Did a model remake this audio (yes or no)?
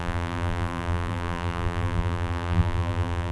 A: yes